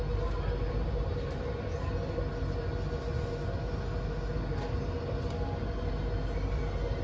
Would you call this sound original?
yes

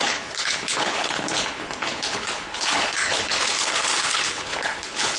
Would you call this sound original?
no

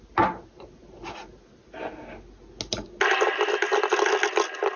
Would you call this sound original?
yes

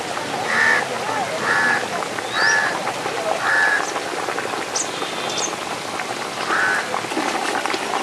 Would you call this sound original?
yes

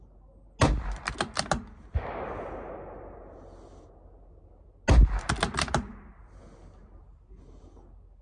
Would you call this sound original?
yes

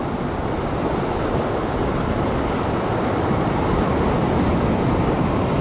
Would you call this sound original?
yes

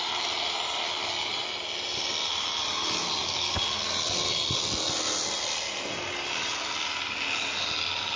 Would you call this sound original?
yes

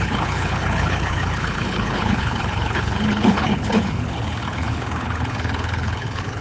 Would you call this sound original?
no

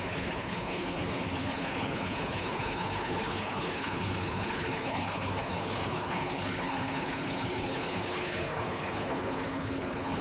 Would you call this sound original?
no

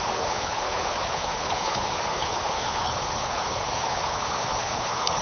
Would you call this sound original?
no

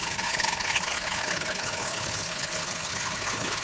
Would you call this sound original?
no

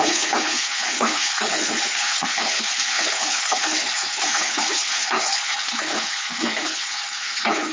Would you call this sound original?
no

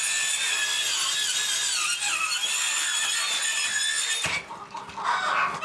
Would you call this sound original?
yes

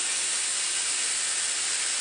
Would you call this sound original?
yes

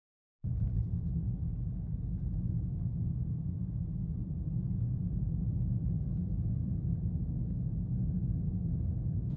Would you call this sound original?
yes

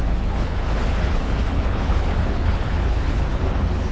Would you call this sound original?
no